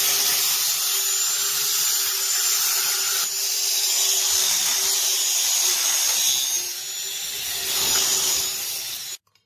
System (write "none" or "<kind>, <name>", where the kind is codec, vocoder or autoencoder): none